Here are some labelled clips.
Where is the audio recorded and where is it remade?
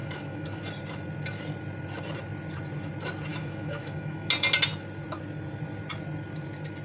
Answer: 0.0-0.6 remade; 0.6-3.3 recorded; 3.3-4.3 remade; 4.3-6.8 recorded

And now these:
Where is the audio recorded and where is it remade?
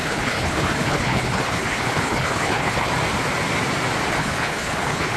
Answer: 0.0-2.9 remade; 2.9-4.1 recorded; 4.1-5.2 remade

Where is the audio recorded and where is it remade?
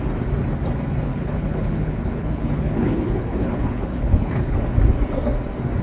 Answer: 0.0-1.1 recorded; 1.1-4.6 remade; 4.6-5.8 recorded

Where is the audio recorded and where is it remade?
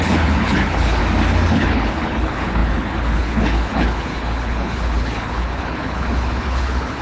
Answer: 0.0-1.0 remade; 1.0-1.5 recorded; 1.5-7.0 remade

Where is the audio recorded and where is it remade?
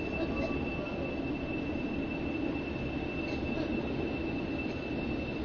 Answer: 0.0-5.4 recorded